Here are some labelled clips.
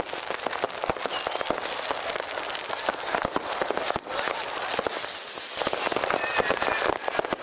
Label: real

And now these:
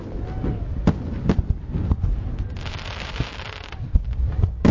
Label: real